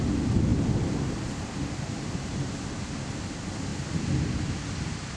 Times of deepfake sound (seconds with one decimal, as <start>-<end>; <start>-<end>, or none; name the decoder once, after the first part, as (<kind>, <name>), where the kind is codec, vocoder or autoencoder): none